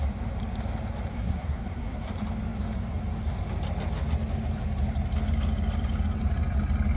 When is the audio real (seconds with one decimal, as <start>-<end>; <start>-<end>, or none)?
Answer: 0.0-1.1; 2.1-7.0